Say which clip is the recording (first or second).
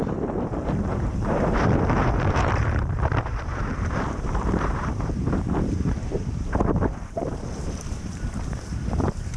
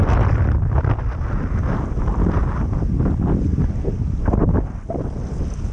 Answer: second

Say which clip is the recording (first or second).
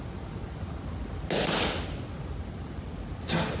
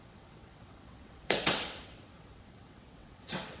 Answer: first